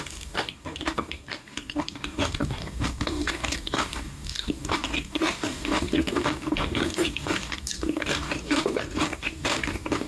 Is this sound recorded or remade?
remade